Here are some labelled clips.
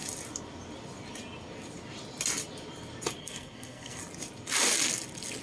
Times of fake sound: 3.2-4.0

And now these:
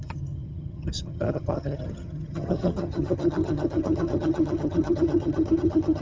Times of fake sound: 0.0-6.0

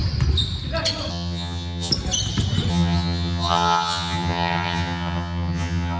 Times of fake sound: 1.1-1.9; 2.7-6.0

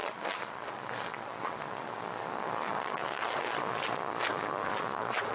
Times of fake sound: 0.0-5.3